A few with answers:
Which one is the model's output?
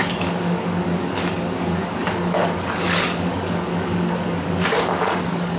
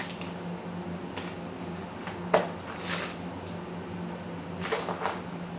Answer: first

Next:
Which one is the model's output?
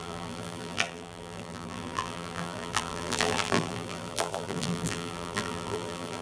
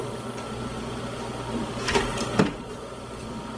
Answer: first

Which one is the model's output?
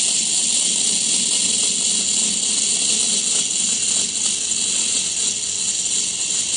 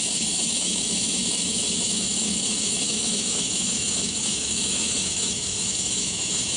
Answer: second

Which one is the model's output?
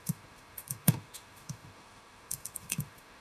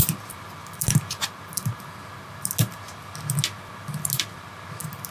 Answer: first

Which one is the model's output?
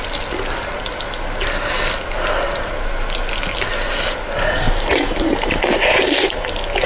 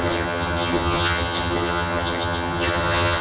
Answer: second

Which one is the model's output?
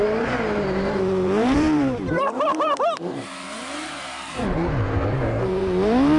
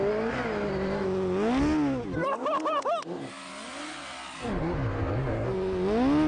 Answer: first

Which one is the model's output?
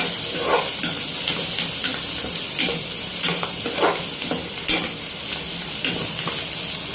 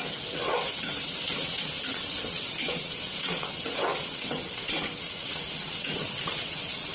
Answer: second